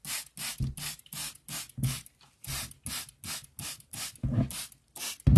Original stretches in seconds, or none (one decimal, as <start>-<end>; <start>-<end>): 0.0-5.4